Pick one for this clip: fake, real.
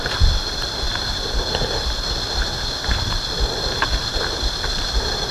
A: real